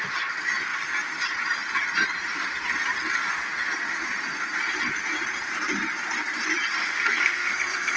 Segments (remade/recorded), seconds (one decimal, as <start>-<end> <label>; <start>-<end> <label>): 0.0-6.8 recorded; 6.8-8.0 remade